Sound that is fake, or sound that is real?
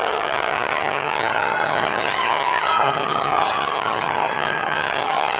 fake